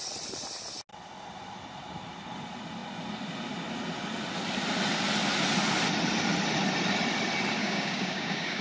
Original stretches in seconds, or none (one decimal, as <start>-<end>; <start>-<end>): 0.0-7.6